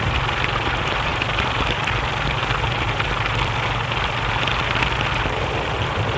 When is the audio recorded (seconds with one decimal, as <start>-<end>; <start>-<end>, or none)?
none